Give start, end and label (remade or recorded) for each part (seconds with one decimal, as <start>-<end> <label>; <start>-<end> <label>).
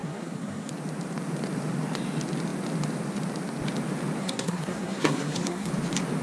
0.0-0.7 remade; 0.7-4.2 recorded; 4.2-5.7 remade; 5.7-6.2 recorded